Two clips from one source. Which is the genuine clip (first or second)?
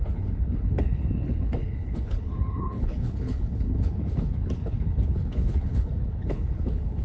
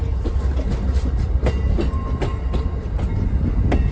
second